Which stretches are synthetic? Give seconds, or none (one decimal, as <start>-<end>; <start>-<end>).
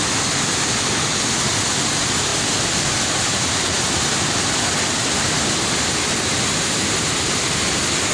none